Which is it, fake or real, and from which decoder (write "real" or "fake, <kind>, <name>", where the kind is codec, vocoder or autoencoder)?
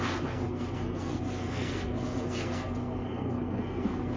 fake, codec, SNAC